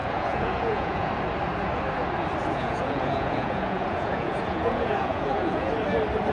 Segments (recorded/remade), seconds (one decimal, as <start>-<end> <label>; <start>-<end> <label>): 0.0-1.1 remade; 1.1-2.4 recorded; 2.4-5.7 remade; 5.7-6.3 recorded